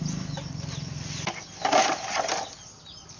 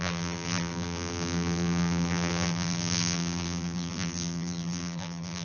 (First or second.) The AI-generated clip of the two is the second